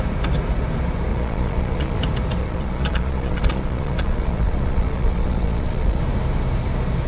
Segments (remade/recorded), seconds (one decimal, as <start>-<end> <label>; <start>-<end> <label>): 0.0-1.1 recorded; 1.1-2.0 remade; 2.0-2.4 recorded; 2.4-6.0 remade; 6.0-7.1 recorded